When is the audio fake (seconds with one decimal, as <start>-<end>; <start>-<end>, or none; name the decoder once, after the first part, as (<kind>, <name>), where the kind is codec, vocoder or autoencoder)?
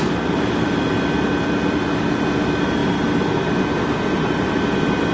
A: none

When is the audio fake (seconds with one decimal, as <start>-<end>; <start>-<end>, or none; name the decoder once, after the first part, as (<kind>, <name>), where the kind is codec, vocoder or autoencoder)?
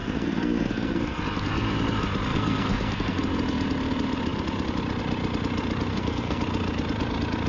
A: 0.0-1.2 (codec, SNAC); 2.3-3.2; 5.9-6.4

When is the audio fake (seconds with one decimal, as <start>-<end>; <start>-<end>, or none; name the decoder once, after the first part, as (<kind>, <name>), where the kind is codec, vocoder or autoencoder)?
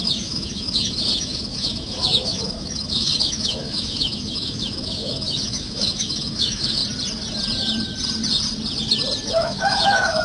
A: 0.0-6.8 (autoencoder, DAC-VAE); 9.3-10.2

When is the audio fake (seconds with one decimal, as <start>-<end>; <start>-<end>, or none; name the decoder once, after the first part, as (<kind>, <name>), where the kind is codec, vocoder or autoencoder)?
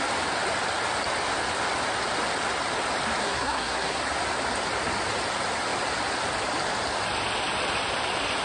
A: 3.2-4.0 (codec, SNAC)